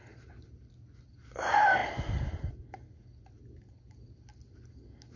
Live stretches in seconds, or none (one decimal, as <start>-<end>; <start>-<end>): 0.0-5.2